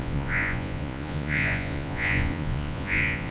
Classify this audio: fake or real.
fake